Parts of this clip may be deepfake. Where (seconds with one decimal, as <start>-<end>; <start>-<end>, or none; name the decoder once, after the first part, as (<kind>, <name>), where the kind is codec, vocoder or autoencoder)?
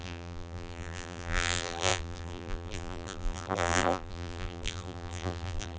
0.0-5.8 (vocoder, BigVGAN v2)